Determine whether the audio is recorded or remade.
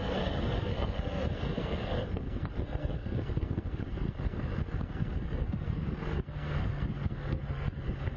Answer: remade